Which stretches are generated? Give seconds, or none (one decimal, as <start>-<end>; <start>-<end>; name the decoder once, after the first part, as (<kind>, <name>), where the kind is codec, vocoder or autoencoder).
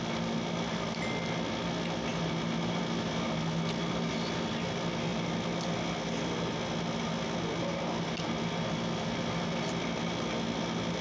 none